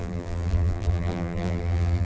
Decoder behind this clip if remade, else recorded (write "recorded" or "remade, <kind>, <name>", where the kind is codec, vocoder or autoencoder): remade, vocoder, BigVGAN v2